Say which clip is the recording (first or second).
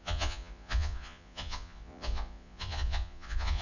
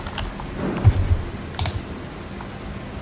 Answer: second